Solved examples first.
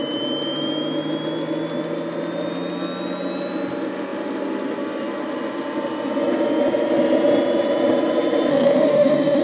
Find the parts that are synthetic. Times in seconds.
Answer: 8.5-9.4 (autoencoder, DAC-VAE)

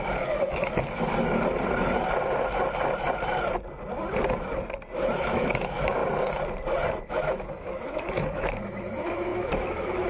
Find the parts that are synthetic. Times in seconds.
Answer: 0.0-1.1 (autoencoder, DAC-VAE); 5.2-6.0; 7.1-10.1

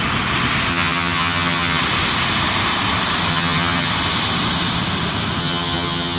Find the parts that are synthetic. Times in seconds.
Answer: 0.7-1.8 (vocoder, HiFi-GAN); 3.3-3.9; 5.4-6.2

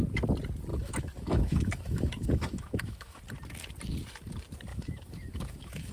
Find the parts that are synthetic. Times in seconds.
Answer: 0.7-3.2 (autoencoder, DAC-VAE); 4.7-5.9

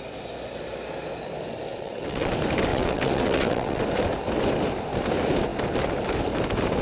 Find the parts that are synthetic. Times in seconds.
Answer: 1.7-2.3 (vocoder, WaveNeXt); 2.7-3.8